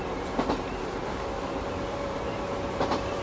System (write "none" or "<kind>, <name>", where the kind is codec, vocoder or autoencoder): vocoder, BigVGAN v2